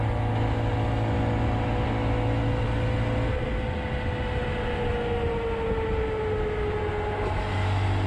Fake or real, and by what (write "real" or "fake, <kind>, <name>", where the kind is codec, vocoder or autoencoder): real